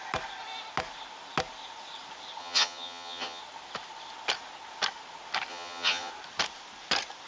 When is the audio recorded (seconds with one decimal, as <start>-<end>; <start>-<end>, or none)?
0.0-2.4; 3.4-5.5; 6.1-7.3